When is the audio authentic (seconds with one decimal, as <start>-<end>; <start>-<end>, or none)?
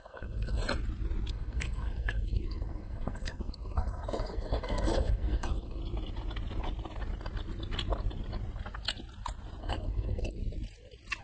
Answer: 0.6-1.3; 5.8-9.6; 10.4-11.2